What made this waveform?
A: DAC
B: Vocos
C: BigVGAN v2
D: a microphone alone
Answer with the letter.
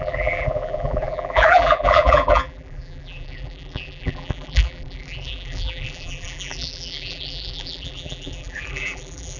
C